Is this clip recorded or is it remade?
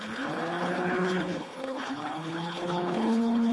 remade